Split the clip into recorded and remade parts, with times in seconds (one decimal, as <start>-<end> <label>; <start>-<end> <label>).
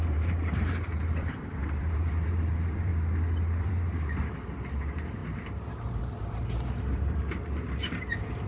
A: 0.0-2.9 remade; 2.9-3.6 recorded; 3.6-8.5 remade